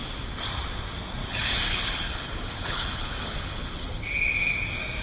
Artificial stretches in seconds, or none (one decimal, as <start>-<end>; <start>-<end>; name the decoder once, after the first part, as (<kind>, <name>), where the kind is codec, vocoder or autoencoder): 1.2-4.2 (codec, HILCodec)